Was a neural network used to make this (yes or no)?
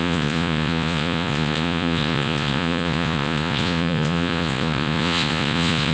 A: yes